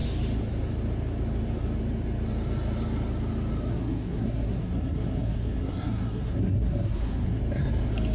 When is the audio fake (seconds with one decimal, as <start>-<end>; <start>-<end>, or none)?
3.7-7.4

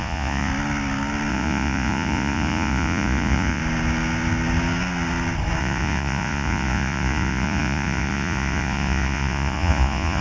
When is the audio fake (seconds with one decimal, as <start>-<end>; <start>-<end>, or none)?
0.0-0.5; 1.3-3.6; 5.6-10.2

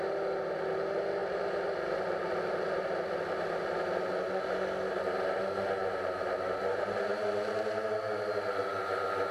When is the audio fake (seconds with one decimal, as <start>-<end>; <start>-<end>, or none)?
none

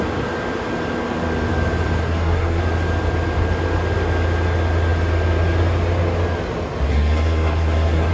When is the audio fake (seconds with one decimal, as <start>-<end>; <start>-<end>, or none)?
2.0-2.6; 6.9-8.1

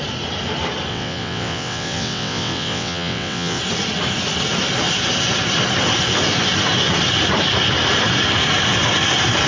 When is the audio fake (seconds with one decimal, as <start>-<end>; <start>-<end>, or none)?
0.9-3.6

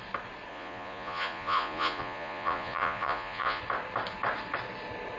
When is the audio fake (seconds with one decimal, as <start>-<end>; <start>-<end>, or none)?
0.5-3.6

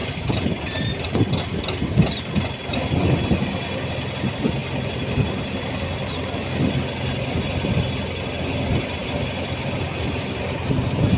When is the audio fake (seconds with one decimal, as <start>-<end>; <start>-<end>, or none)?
0.0-1.4; 9.0-11.2